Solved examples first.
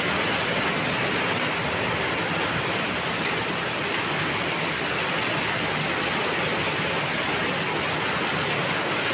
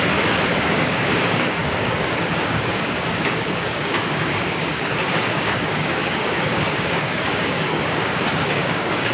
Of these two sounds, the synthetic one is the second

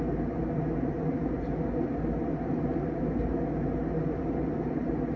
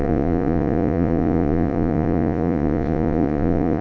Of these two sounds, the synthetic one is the second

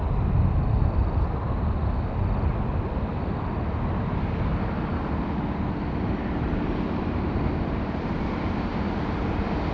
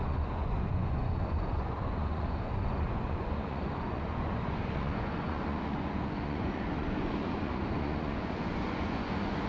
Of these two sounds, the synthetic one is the second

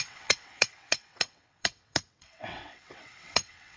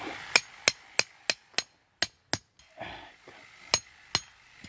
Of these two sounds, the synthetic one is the first